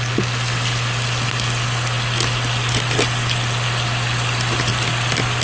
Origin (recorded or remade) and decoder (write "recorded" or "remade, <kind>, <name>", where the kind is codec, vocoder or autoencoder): recorded